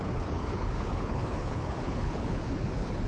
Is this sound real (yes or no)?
no